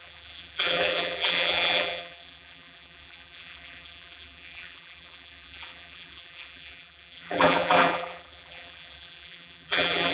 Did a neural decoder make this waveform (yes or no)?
yes